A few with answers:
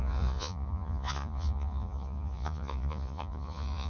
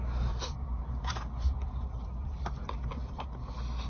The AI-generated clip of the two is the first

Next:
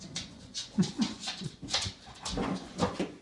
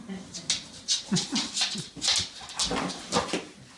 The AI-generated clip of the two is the first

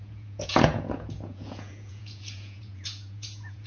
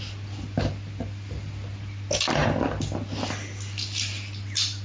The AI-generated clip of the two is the first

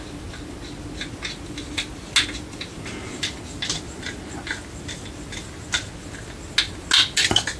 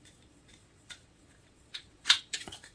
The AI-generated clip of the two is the second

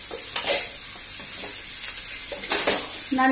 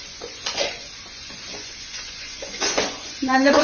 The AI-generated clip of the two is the second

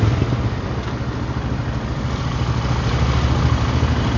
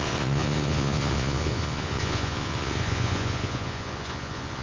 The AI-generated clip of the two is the second